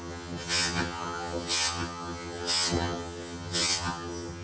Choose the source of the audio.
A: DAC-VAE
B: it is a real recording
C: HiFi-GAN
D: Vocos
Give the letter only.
C